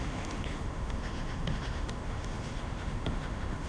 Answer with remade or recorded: remade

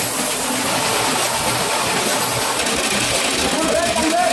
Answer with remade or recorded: recorded